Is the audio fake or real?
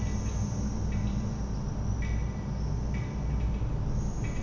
real